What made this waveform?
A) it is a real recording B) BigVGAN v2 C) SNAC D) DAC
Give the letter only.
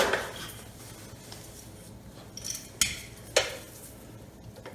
A